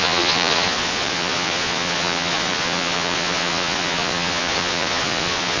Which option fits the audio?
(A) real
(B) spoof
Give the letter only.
B